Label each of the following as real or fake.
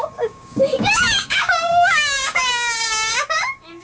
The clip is fake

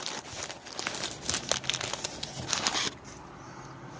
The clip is real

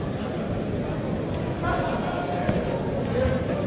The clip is real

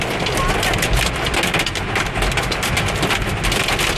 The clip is real